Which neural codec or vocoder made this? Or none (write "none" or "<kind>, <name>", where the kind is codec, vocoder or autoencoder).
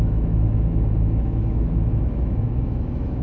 autoencoder, DAC-VAE